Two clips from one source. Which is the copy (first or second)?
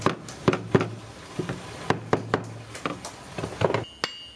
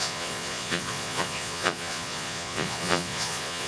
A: second